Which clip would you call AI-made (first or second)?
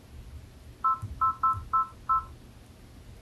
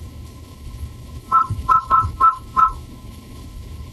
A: second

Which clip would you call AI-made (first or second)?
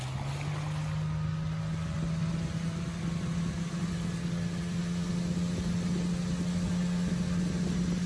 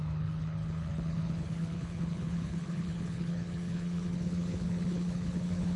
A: second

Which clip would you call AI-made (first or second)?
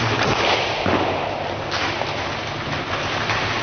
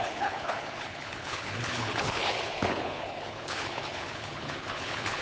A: second